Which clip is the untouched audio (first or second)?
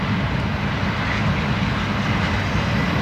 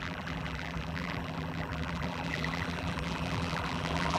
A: first